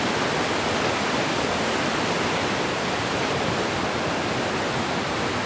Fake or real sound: real